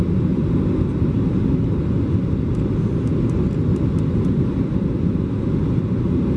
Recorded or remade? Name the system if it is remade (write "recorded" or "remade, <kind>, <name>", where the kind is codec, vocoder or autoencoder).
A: recorded